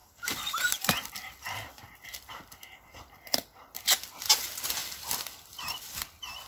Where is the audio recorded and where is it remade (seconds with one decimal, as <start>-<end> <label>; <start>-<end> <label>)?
0.0-3.0 remade; 3.0-4.8 recorded; 4.8-6.5 remade